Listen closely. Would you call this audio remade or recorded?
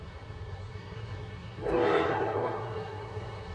remade